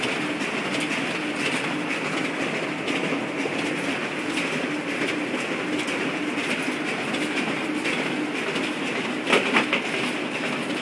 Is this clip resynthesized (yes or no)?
no